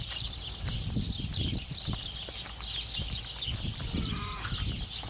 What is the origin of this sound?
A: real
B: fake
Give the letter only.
A